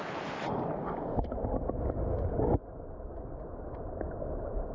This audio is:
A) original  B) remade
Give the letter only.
A